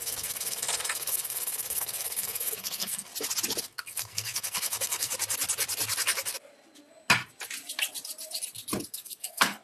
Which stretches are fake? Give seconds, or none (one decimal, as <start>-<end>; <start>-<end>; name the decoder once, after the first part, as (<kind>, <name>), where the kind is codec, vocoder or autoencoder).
0.0-3.1 (codec, SNAC); 3.6-5.1; 8.9-9.6